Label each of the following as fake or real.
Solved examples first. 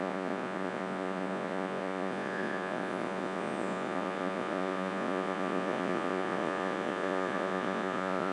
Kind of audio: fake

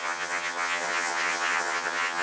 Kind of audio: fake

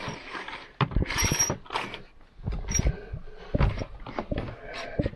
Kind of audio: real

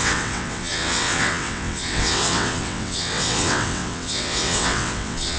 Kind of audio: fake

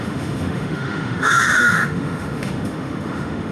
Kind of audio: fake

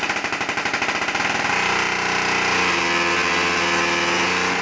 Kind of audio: real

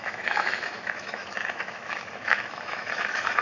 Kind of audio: fake